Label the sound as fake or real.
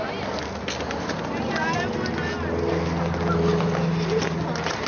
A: real